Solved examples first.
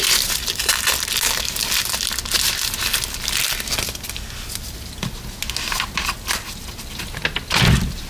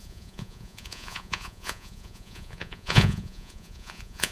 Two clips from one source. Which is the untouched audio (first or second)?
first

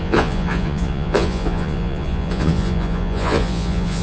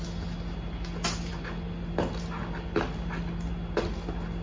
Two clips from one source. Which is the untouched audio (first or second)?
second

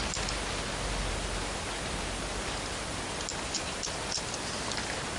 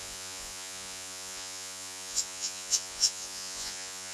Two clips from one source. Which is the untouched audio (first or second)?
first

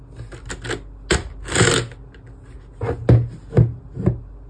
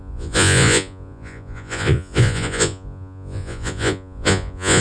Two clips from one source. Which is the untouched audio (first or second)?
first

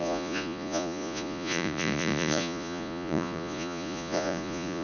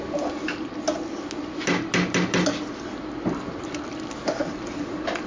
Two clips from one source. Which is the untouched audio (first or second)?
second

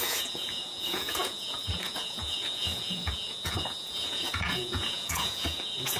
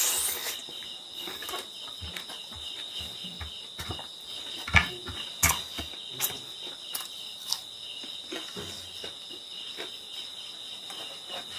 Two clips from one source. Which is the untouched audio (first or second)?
second